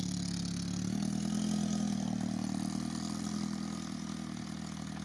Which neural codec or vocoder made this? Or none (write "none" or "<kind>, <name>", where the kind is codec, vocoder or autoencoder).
none